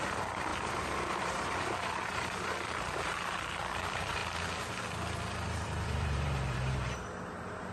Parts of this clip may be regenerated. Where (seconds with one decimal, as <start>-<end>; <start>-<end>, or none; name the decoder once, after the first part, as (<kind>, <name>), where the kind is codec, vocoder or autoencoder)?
0.0-4.2 (vocoder, BigVGAN v2); 5.3-7.7